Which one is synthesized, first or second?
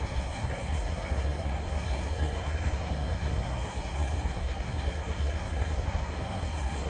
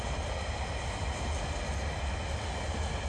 first